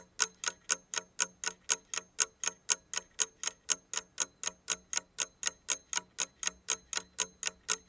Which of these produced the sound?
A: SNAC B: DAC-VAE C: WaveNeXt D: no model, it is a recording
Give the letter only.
D